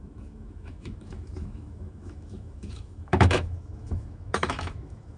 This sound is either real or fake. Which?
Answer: fake